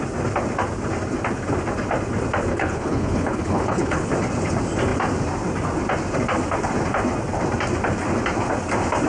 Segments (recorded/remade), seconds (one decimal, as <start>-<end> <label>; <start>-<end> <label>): 0.0-2.5 recorded; 2.5-4.1 remade; 4.1-9.1 recorded